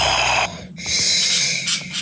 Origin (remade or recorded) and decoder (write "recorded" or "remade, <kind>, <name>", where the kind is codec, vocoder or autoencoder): recorded